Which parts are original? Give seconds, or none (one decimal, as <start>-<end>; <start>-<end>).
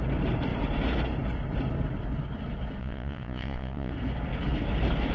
0.0-2.8; 3.9-5.1